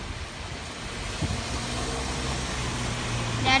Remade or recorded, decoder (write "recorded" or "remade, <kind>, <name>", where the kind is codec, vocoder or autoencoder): recorded